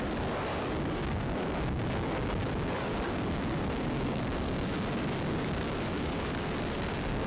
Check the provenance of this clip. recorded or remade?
remade